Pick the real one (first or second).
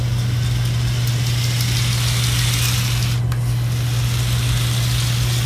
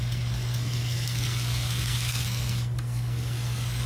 first